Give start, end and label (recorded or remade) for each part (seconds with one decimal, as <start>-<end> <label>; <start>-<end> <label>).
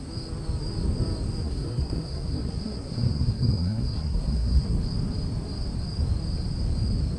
0.0-1.4 recorded; 1.4-4.8 remade; 4.8-7.2 recorded